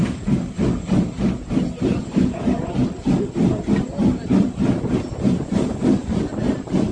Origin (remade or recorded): recorded